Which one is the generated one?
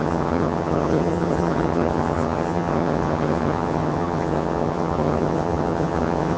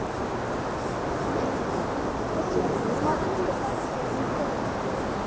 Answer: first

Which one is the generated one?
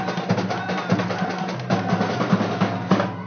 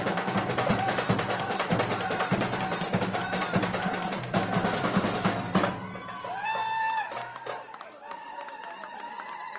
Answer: second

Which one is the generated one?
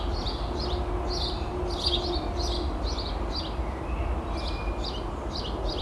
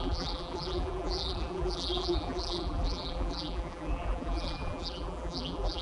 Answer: second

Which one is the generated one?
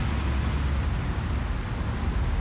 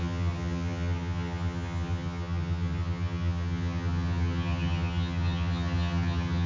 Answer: second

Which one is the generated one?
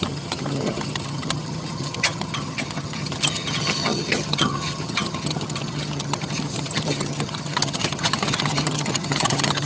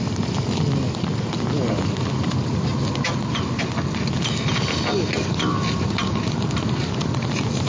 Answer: first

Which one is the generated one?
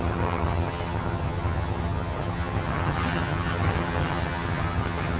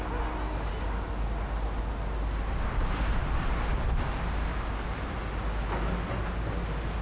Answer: first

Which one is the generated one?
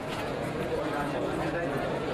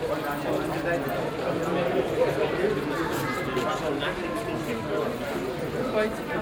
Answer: first